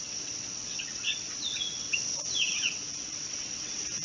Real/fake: fake